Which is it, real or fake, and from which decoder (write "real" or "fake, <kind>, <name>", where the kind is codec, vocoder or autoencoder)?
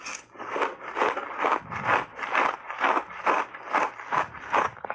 real